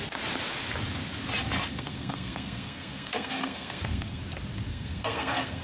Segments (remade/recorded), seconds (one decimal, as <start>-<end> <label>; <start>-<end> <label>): 0.0-1.7 recorded; 1.7-4.2 remade; 4.2-4.7 recorded; 4.7-5.6 remade